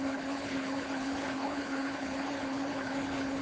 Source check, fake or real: fake